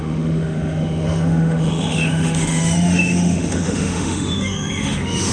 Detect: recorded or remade remade